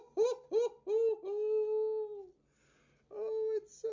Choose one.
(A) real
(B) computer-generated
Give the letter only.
A